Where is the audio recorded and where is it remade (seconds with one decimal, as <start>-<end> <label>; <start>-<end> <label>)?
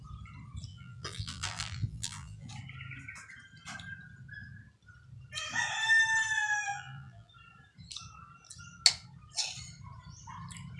0.0-0.7 recorded; 0.7-2.5 remade; 2.5-6.7 recorded; 6.7-7.3 remade; 7.3-10.8 recorded